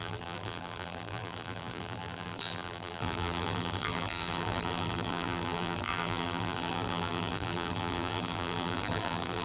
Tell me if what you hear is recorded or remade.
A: remade